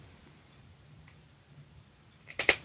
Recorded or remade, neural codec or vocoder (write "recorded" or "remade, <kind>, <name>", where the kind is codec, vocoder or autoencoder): remade, vocoder, BigVGAN v2